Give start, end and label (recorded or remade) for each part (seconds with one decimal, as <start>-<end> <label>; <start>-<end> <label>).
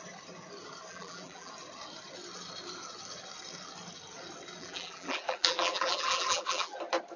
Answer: 0.0-0.9 recorded; 0.9-1.5 remade; 1.5-4.6 recorded; 4.6-6.8 remade; 6.8-7.2 recorded